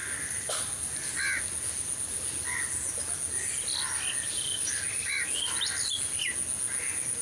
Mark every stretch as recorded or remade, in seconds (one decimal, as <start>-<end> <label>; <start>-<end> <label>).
0.0-7.2 recorded